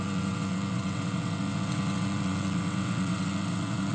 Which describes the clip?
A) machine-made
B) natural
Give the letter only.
A